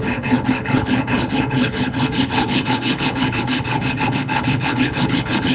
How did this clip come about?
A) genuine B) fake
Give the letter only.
B